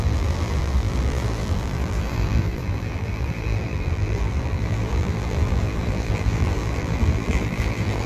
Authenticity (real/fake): fake